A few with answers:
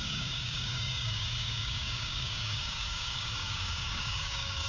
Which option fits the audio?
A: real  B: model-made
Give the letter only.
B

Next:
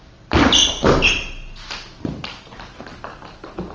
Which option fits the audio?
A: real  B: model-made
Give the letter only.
A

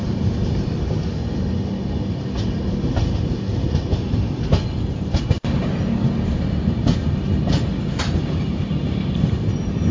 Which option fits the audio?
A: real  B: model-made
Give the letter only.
A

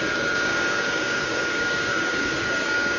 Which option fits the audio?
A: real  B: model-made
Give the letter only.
B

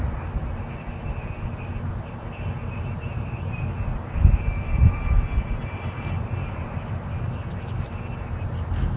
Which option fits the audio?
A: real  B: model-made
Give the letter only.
A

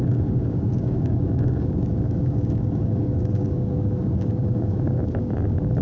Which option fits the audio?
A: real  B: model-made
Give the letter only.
B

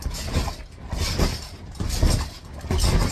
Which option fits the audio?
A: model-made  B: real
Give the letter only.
B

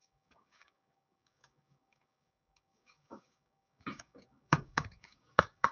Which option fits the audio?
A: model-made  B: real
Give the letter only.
A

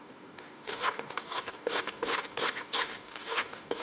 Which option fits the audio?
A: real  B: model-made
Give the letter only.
B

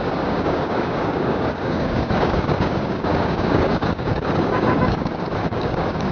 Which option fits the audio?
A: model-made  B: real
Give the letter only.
A